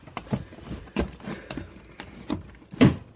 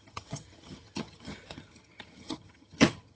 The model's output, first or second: second